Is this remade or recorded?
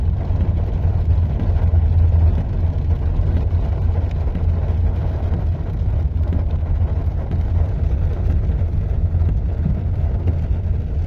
recorded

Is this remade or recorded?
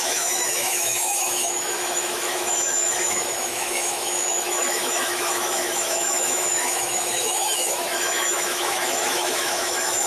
remade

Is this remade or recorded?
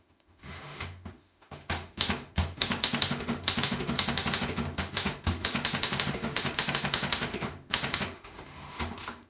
remade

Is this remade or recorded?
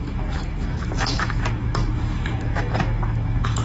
remade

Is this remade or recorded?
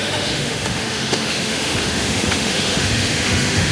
remade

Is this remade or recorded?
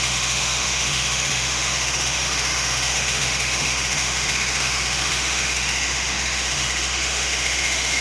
remade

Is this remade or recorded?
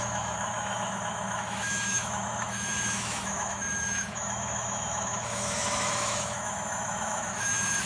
remade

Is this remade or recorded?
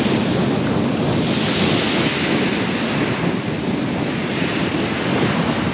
recorded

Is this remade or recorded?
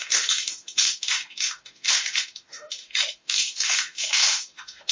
remade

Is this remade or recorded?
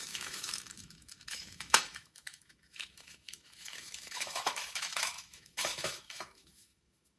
remade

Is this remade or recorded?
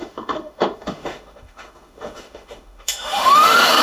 remade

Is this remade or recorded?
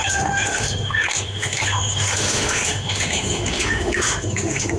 remade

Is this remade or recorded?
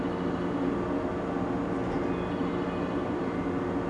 recorded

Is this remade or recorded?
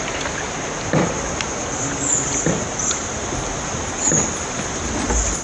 recorded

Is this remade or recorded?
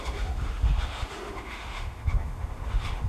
remade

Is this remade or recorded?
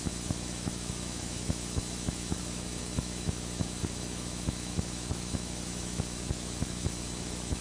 remade